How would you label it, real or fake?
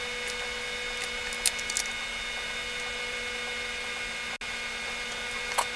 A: real